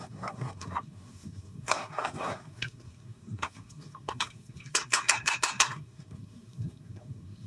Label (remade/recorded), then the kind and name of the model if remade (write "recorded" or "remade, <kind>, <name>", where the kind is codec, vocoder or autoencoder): remade, codec, SNAC